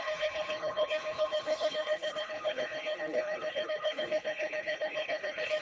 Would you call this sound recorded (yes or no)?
no